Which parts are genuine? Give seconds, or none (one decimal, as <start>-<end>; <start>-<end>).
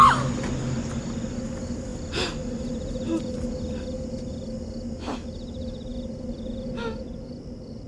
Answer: 0.0-7.9